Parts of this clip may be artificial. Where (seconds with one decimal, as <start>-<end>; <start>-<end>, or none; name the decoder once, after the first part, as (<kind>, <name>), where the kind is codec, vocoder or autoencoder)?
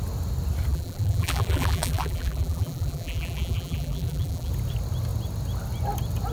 0.7-4.5 (vocoder, BigVGAN v2)